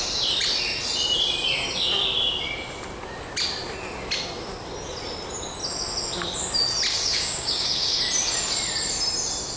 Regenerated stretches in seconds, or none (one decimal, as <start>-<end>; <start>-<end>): 6.9-8.0